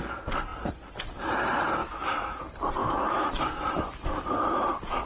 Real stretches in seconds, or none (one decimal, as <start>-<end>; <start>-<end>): 0.0-1.8; 2.4-2.8; 3.3-5.1